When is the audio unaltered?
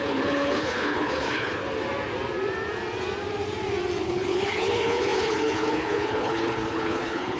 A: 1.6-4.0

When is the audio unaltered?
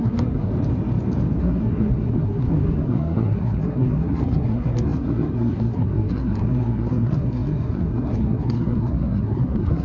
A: 0.5-1.4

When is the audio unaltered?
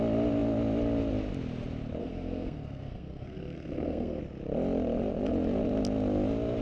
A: 0.0-2.0; 4.2-6.6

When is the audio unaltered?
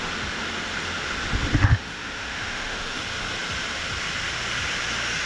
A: 0.0-1.7; 3.0-5.3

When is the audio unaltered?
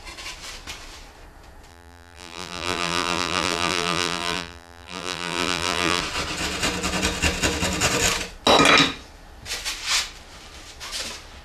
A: 0.0-1.7; 6.0-11.4